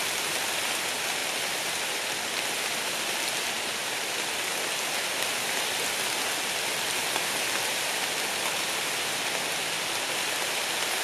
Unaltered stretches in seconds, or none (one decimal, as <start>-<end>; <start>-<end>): 0.0-11.0